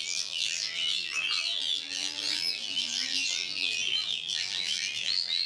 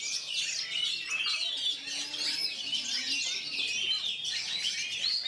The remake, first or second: first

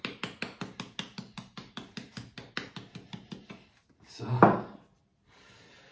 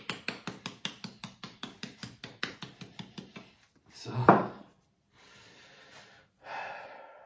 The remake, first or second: second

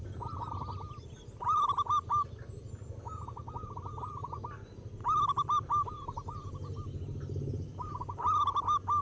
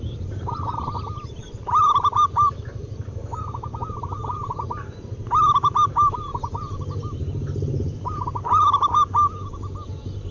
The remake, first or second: second